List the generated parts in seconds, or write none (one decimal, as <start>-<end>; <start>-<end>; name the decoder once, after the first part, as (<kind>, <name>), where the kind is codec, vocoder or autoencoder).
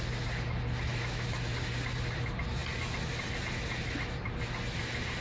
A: 0.9-1.4 (autoencoder, DAC-VAE)